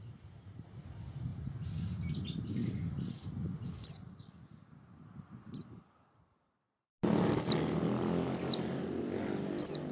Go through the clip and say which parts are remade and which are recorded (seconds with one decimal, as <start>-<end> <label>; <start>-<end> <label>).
0.0-9.9 recorded